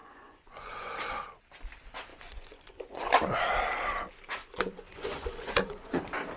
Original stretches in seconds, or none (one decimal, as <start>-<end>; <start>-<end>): 0.9-2.1; 3.1-4.4; 6.0-6.4